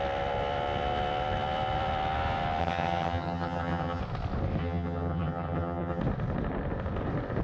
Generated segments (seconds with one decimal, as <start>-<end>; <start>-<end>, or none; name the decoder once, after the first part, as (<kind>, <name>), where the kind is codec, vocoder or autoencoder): 2.6-4.0 (vocoder, HiFi-GAN); 4.6-6.0